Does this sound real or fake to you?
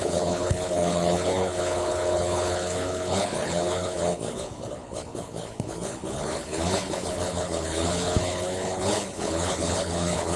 fake